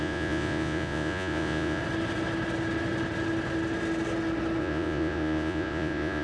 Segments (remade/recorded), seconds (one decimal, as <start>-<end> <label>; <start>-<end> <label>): 0.0-1.8 remade; 1.8-4.6 recorded; 4.6-6.2 remade